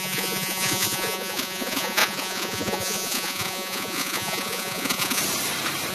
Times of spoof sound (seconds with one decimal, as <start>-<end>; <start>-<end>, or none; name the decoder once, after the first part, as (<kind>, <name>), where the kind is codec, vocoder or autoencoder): 0.0-5.2 (vocoder, Vocos)